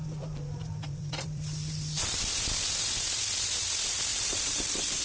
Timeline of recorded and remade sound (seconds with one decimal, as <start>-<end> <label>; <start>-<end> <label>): 0.0-2.3 remade; 2.3-4.1 recorded; 4.1-5.0 remade